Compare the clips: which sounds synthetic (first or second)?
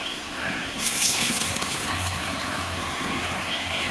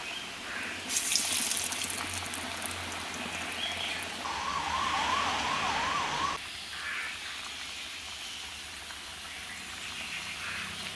first